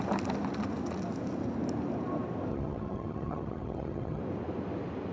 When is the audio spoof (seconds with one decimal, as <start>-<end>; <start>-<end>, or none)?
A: 2.5-4.2